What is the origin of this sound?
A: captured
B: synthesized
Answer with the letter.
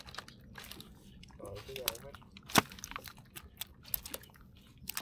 A